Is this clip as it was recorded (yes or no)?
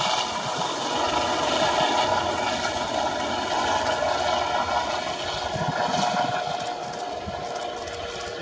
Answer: yes